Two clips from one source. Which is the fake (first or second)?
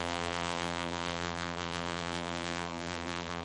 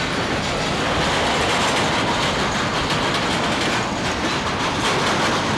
first